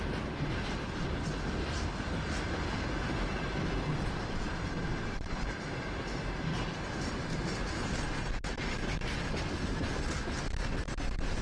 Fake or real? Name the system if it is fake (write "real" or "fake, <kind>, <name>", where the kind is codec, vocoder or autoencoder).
real